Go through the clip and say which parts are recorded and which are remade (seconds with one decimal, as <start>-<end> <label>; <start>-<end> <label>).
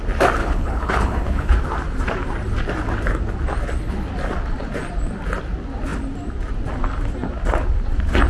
0.0-0.4 recorded; 0.4-1.5 remade; 1.5-8.3 recorded